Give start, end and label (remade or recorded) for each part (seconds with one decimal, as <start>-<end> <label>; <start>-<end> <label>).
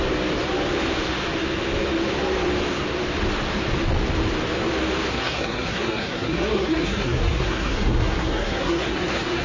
0.0-5.1 recorded; 5.1-9.4 remade